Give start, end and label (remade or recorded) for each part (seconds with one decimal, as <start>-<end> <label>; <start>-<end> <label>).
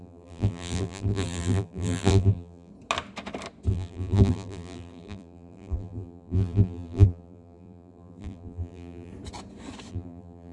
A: 0.0-2.7 remade; 2.7-3.7 recorded; 3.7-9.1 remade; 9.1-9.9 recorded; 9.9-10.5 remade